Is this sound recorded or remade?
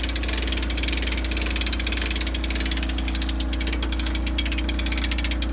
recorded